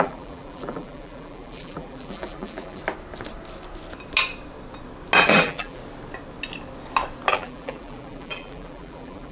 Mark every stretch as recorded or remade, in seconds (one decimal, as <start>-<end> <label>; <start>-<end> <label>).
0.0-2.8 remade; 2.8-5.2 recorded; 5.2-5.8 remade; 5.8-7.3 recorded; 7.3-9.3 remade